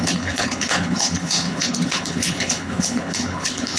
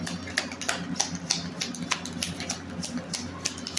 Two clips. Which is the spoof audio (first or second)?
first